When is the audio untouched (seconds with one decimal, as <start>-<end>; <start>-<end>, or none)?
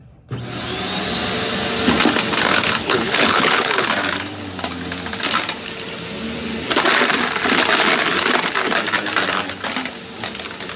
0.0-2.8; 3.9-10.8